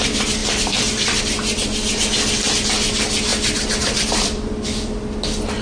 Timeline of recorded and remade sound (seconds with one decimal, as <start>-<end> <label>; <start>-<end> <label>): 0.0-0.4 recorded; 0.4-1.2 remade; 1.2-3.3 recorded; 3.3-4.6 remade; 4.6-5.6 recorded